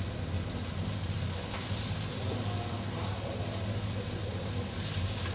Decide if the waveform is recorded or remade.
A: recorded